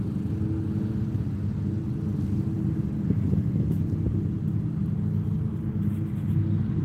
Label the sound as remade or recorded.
recorded